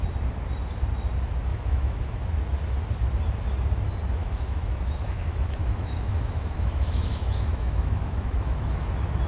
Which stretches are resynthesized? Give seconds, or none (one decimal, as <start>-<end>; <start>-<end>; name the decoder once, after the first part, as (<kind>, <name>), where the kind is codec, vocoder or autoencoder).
1.5-2.3 (autoencoder, DAC-VAE); 4.2-8.9